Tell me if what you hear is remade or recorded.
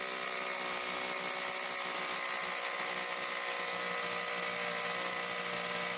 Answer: recorded